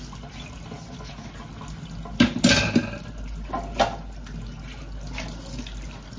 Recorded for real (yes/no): yes